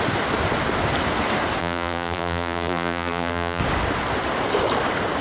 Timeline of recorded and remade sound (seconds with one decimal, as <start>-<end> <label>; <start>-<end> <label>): 0.0-1.6 recorded; 1.6-3.6 remade; 3.6-5.2 recorded